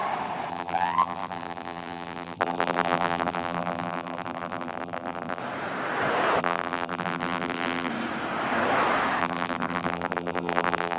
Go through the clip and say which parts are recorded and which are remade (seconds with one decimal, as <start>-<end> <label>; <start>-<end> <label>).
0.0-0.5 recorded; 0.5-5.4 remade; 5.4-6.4 recorded; 6.4-7.9 remade; 7.9-9.2 recorded; 9.2-11.0 remade